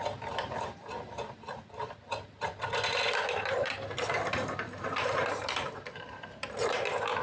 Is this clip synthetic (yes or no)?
yes